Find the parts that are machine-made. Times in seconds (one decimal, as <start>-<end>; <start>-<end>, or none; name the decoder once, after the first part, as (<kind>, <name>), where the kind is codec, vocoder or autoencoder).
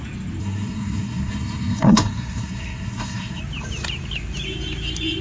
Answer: 0.4-3.4 (codec, SNAC)